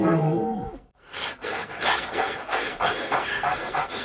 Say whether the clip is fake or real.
fake